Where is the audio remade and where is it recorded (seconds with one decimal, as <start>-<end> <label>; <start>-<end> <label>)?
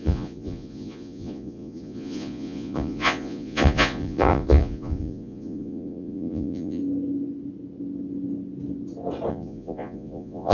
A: 0.0-6.8 remade; 6.8-9.3 recorded; 9.3-10.5 remade